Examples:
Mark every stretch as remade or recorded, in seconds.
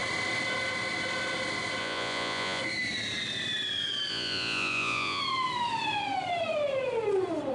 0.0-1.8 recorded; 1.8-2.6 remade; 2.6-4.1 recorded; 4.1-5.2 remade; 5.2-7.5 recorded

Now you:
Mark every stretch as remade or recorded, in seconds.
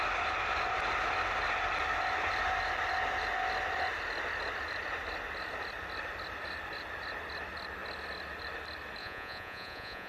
0.0-9.0 recorded; 9.0-10.1 remade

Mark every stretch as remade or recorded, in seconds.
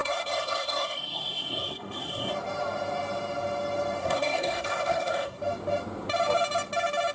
0.0-2.3 remade; 2.3-4.0 recorded; 4.0-5.4 remade; 5.4-7.1 recorded